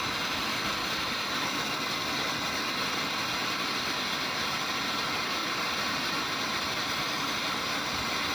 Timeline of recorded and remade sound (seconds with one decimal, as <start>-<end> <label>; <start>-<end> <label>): 0.0-0.8 recorded; 0.8-1.6 remade; 1.6-5.4 recorded; 5.4-7.7 remade; 7.7-8.3 recorded